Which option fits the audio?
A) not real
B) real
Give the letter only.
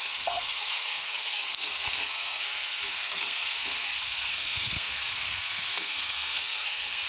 A